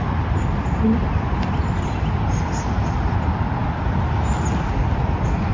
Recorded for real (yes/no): yes